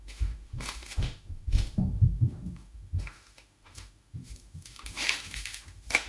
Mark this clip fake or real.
fake